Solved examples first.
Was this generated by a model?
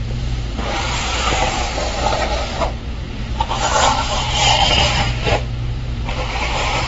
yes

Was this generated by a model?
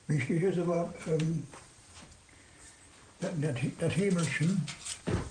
yes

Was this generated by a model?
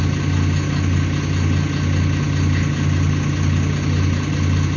no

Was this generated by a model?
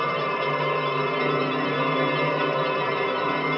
yes